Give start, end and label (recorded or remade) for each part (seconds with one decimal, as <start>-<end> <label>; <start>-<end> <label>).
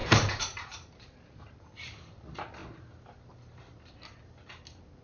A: 0.0-1.7 remade; 1.7-5.0 recorded